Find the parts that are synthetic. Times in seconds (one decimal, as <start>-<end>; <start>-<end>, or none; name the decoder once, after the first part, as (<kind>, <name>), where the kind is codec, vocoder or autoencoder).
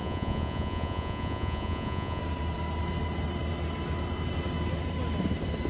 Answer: 0.0-2.2 (vocoder, Vocos)